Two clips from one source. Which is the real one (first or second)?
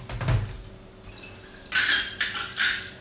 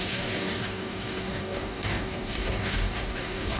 first